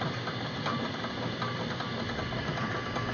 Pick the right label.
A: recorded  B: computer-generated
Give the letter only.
A